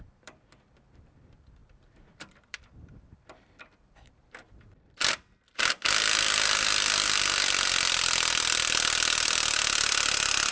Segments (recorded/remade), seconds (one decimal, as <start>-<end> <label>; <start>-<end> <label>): 0.0-10.5 remade